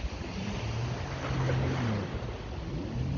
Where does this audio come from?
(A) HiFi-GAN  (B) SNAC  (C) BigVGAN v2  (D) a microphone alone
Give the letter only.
D